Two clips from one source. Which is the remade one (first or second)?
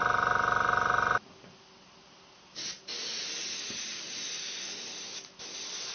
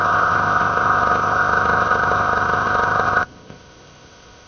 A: second